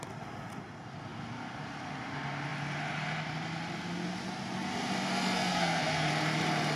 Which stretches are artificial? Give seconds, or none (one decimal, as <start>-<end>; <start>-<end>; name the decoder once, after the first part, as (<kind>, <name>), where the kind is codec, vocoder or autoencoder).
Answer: 5.1-6.1 (codec, SNAC)